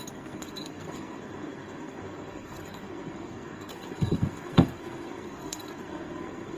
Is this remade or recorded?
remade